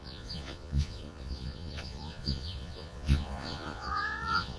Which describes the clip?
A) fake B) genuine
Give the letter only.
A